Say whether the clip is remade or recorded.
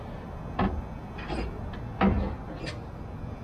recorded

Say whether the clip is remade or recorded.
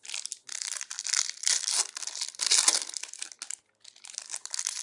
recorded